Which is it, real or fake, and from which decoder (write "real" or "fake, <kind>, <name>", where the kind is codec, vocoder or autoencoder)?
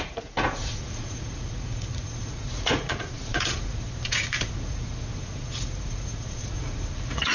fake, vocoder, Vocos